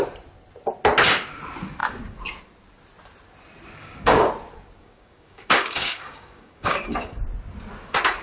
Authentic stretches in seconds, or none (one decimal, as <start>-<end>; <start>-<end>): 0.0-3.8; 4.3-4.8; 7.2-8.2